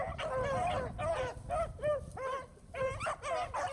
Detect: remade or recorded recorded